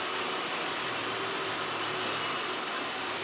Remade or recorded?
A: recorded